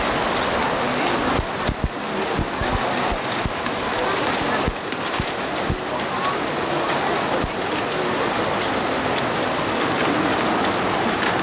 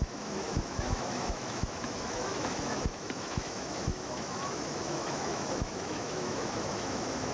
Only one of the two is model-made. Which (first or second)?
second